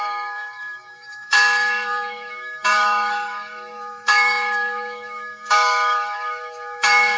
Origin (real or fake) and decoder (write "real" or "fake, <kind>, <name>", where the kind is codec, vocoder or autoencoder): fake, autoencoder, DAC-VAE